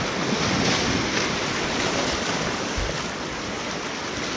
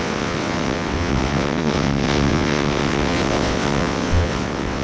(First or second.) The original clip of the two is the first